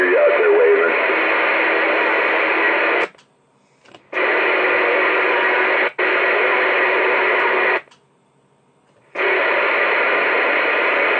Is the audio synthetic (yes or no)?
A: no